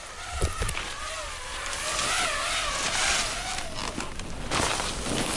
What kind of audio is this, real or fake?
real